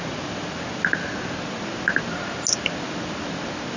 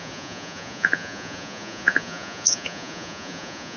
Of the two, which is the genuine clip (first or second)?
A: first